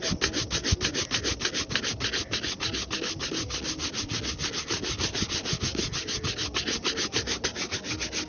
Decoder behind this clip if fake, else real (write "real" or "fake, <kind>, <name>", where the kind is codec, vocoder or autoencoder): real